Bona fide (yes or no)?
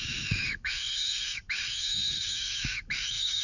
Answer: no